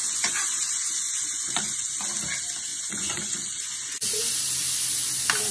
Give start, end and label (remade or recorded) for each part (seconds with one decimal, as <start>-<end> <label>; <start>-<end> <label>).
0.0-1.9 remade; 1.9-2.7 recorded; 2.7-4.2 remade; 4.2-5.5 recorded